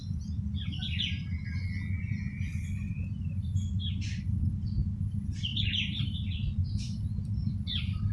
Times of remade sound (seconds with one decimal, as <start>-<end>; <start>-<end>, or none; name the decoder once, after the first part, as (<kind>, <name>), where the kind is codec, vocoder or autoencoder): 3.4-6.6 (vocoder, BigVGAN v2); 7.5-8.1